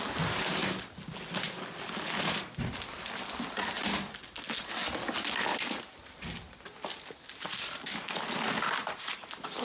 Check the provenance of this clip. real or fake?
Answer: real